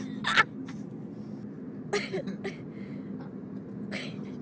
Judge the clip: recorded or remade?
recorded